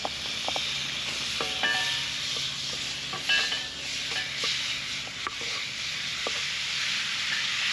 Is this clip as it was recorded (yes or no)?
yes